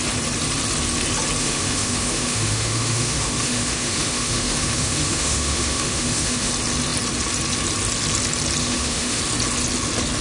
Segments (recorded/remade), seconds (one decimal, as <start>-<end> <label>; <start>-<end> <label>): 0.0-1.4 recorded; 1.4-6.5 remade; 6.5-8.6 recorded; 8.6-9.2 remade; 9.2-10.2 recorded